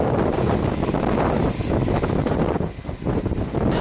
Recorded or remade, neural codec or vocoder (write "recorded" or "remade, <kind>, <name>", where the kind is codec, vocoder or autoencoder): recorded